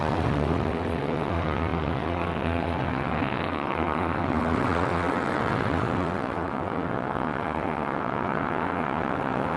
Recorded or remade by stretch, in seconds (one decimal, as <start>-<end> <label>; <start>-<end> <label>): 0.0-9.6 remade